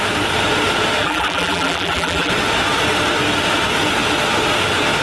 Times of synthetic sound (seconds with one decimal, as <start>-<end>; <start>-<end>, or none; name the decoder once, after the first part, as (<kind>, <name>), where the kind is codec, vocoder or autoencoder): 1.0-2.3 (vocoder, BigVGAN v2)